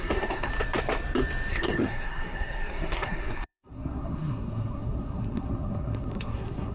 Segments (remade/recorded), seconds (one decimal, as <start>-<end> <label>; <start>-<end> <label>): 0.0-0.5 remade; 0.5-1.5 recorded; 1.5-6.7 remade